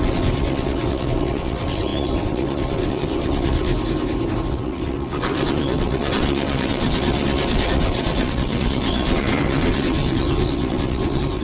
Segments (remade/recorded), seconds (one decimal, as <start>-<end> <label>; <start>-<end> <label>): 0.0-3.7 remade; 3.7-4.5 recorded; 4.5-11.4 remade